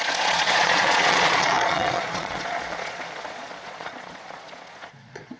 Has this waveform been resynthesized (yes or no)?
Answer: yes